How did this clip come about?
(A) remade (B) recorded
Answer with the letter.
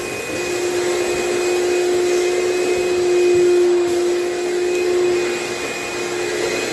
B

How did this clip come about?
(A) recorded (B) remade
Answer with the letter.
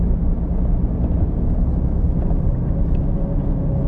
A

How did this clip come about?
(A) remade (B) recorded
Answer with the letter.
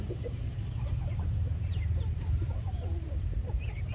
A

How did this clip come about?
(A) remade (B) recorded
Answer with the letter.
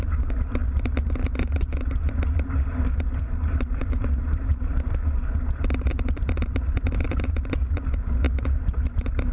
A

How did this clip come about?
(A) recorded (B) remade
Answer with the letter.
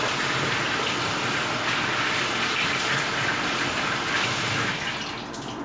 A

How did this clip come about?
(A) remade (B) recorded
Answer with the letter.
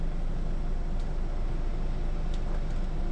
B